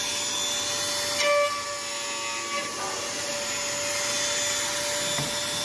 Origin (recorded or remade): recorded